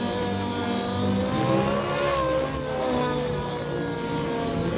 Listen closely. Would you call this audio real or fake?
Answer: real